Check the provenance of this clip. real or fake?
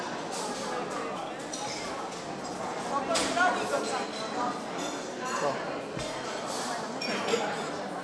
real